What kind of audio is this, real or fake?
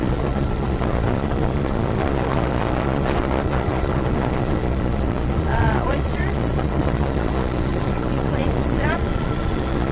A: fake